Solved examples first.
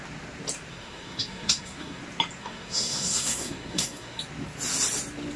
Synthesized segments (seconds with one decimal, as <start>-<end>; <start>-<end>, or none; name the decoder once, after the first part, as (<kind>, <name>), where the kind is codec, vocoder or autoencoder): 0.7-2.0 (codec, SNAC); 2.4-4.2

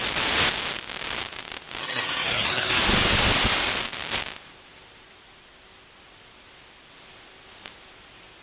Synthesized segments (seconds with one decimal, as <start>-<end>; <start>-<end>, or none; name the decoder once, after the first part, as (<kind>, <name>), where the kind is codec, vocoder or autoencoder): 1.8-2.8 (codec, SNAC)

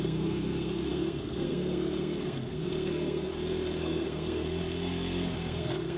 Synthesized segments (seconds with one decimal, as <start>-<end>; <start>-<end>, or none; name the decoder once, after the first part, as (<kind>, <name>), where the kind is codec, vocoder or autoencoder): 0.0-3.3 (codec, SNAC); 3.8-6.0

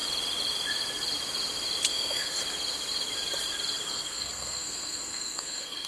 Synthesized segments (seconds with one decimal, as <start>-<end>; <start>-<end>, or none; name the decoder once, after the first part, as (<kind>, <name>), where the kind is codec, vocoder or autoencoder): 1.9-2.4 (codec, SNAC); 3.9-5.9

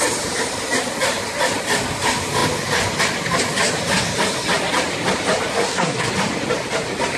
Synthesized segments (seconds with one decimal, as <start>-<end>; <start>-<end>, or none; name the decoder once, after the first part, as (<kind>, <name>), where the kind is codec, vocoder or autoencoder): 5.5-6.1 (codec, SNAC)

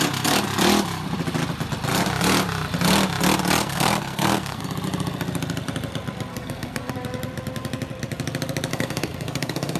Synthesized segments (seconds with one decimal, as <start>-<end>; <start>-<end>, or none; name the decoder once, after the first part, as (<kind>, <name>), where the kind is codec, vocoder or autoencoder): 3.6-4.6 (codec, SNAC); 6.3-6.9; 8.7-9.8

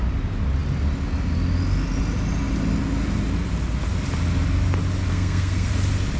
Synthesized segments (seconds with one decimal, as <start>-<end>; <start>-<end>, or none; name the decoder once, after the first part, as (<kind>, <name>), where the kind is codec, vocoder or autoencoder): 5.1-5.7 (codec, SNAC)